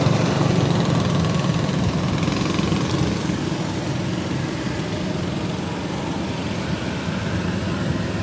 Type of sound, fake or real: real